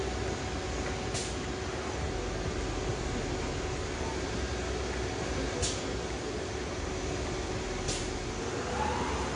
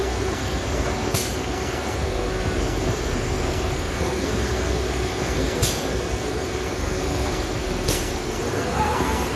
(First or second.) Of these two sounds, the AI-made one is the second